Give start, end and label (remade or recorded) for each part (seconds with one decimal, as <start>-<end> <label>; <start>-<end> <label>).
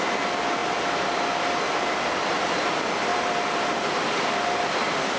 0.0-3.1 recorded; 3.1-5.2 remade